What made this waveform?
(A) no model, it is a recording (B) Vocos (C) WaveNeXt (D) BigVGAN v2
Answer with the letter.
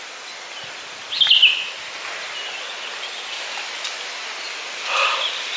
A